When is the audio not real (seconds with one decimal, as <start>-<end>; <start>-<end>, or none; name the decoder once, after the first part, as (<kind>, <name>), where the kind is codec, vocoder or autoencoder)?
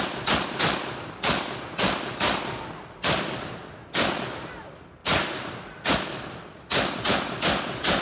none